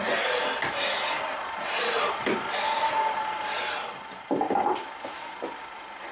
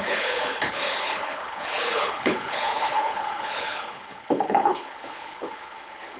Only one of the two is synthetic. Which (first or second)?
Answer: second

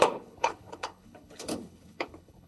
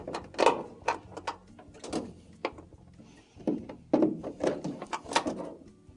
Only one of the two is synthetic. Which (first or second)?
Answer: first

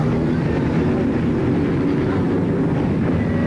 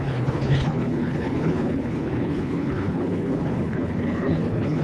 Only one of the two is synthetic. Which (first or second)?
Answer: second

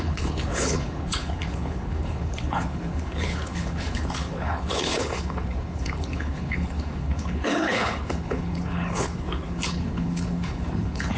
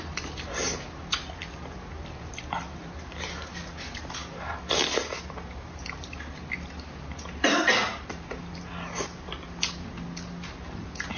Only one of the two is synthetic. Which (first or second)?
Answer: first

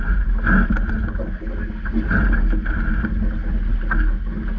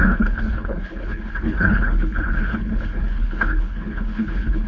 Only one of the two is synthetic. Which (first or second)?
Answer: second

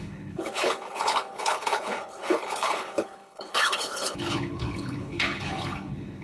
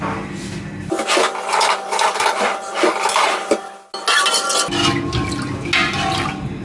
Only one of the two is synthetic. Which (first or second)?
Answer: first